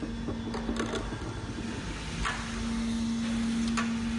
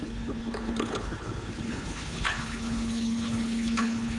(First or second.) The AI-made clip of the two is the second